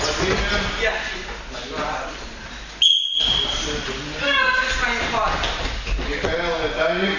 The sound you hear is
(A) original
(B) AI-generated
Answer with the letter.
A